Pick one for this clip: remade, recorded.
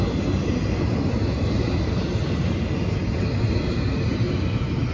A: recorded